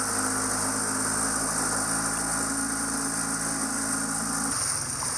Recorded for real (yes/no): yes